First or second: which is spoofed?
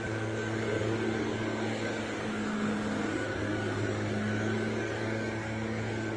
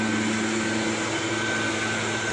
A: first